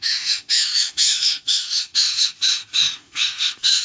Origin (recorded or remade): remade